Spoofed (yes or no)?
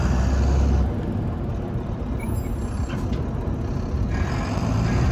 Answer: no